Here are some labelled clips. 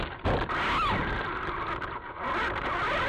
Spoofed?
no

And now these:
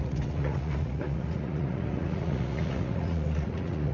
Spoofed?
yes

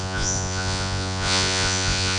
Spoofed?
yes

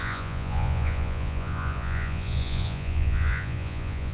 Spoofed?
yes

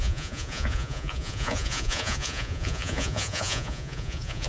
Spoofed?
yes